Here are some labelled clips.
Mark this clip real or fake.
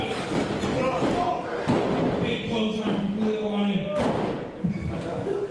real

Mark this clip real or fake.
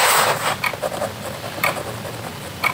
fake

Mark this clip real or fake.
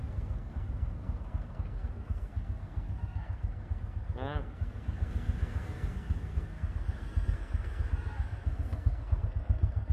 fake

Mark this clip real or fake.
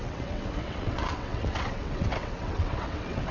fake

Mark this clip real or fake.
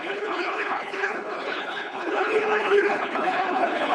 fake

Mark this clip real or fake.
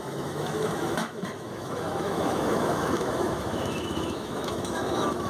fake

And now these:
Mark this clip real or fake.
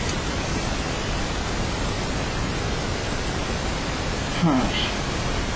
real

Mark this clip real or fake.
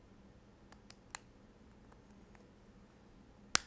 real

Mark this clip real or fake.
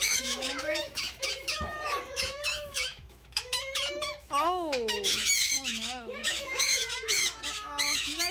fake